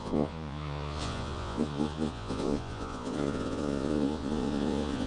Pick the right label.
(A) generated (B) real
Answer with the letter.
A